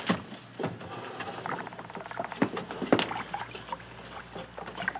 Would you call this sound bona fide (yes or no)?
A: yes